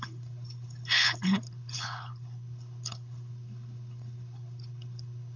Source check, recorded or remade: remade